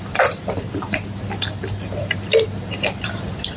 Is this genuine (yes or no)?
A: no